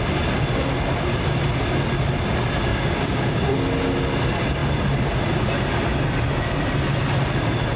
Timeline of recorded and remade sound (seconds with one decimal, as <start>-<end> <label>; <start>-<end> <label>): 0.0-2.7 recorded; 2.7-3.4 remade; 3.4-7.8 recorded